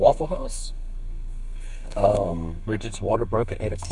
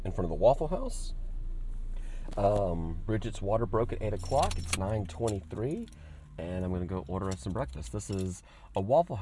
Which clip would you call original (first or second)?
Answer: second